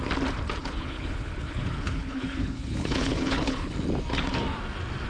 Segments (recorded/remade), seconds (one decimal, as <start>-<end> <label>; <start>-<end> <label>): 0.0-0.6 recorded; 0.6-3.7 remade; 3.7-5.1 recorded